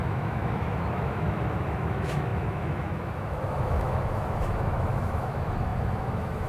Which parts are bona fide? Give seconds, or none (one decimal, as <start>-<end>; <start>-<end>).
none